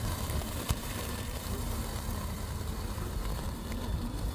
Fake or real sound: fake